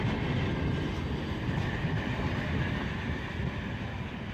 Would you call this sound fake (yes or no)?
no